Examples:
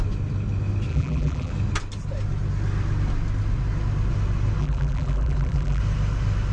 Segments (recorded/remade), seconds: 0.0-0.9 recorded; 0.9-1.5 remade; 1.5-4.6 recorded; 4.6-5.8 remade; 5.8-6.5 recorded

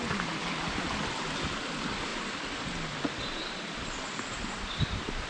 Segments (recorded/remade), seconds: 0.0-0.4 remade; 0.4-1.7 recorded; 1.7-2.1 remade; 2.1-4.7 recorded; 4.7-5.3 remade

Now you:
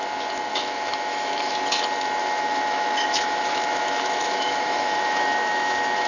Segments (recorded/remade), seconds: 0.0-0.5 recorded; 0.5-1.5 remade; 1.5-2.2 recorded; 2.2-6.1 remade

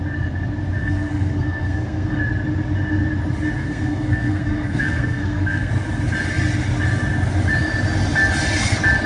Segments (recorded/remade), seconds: 0.0-0.8 recorded; 0.8-2.2 remade; 2.2-3.6 recorded; 3.6-5.7 remade; 5.7-9.1 recorded

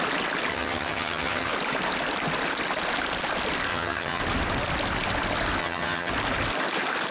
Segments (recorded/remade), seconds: 0.0-0.5 recorded; 0.5-1.5 remade; 1.5-3.7 recorded; 3.7-4.2 remade; 4.2-5.6 recorded; 5.6-6.1 remade; 6.1-7.1 recorded

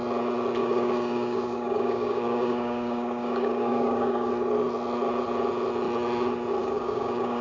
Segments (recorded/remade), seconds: 0.0-0.6 recorded; 0.6-4.3 remade; 4.3-6.6 recorded; 6.6-7.4 remade

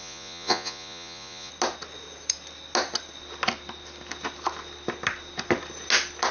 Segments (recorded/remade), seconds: 0.0-1.5 remade; 1.5-6.3 recorded